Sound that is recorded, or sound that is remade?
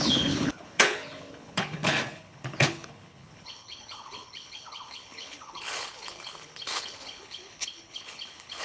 remade